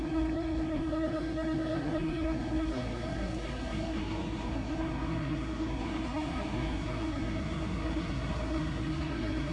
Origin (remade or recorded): remade